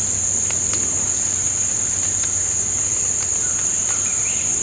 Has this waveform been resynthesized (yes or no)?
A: no